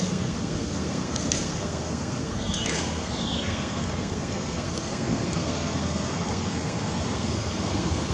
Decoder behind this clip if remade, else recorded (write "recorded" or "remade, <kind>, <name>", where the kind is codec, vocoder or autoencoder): remade, codec, SNAC